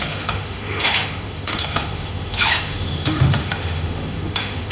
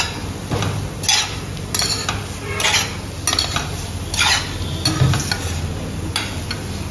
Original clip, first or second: second